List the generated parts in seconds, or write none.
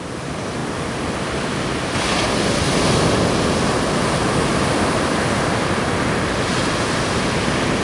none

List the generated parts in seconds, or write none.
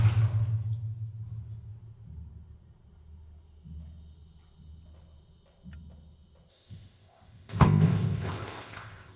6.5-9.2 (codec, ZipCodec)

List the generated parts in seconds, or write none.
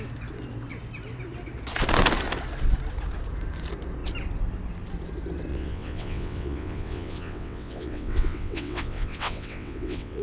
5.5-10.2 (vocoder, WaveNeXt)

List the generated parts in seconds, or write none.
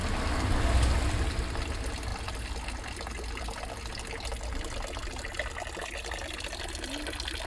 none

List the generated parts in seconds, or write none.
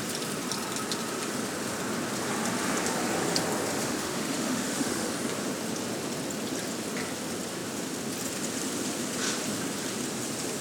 3.8-5.1 (autoencoder, DAC-VAE)